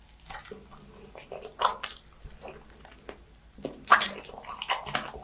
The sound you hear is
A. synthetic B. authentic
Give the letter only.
B